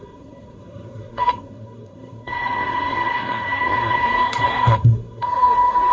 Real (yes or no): no